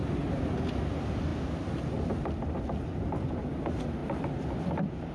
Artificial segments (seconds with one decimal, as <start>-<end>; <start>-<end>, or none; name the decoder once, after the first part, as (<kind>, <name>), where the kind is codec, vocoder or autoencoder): none